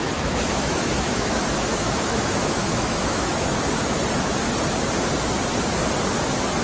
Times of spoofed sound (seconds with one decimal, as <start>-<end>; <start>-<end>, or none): 0.0-4.0